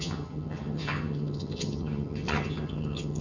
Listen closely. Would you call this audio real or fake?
fake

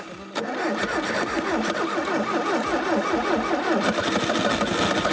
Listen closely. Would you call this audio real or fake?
real